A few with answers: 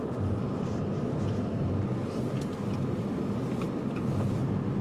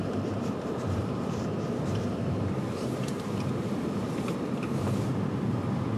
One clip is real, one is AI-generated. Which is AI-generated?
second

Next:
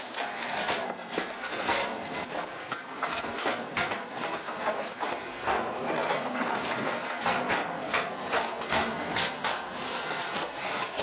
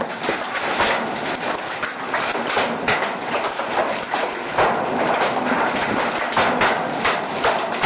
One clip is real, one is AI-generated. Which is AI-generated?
first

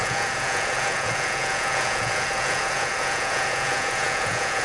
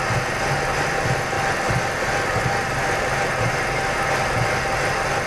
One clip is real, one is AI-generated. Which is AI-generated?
first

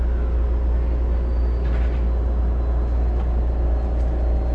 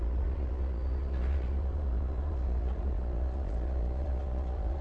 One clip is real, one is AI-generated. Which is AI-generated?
second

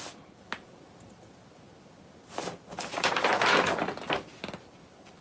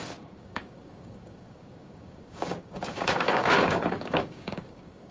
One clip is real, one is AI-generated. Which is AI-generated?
second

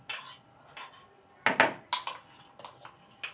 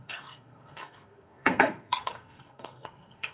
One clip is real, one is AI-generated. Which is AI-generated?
second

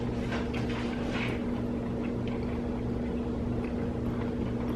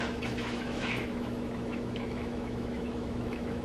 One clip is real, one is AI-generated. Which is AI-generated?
second